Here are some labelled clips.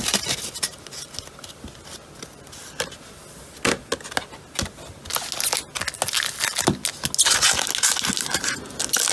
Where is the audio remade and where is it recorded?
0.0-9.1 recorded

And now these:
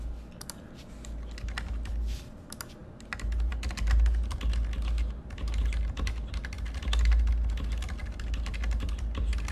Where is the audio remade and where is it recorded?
0.0-9.5 recorded

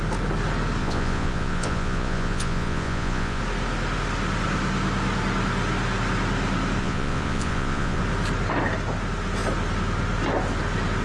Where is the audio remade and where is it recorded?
0.0-0.8 recorded; 0.8-3.4 remade; 3.4-6.8 recorded; 6.8-8.0 remade; 8.0-11.0 recorded

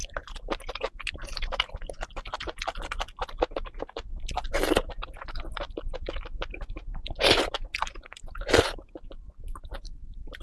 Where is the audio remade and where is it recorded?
0.0-10.4 recorded